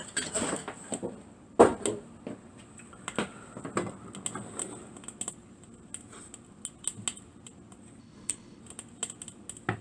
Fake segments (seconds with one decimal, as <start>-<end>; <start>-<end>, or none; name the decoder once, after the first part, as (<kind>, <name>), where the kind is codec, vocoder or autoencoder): 8.0-8.6 (codec, HILCodec)